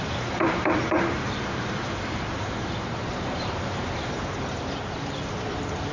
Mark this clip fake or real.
fake